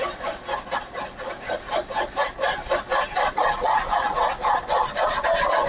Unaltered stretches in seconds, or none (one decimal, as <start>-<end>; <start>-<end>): 0.0-5.7